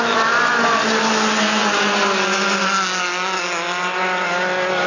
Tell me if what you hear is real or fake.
real